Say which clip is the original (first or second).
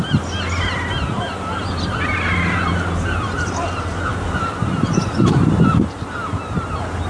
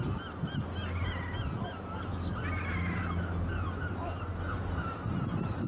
second